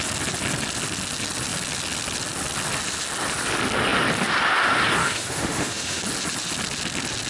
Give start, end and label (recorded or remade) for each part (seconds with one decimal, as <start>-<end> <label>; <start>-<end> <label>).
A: 0.0-5.0 recorded; 5.0-6.0 remade; 6.0-7.3 recorded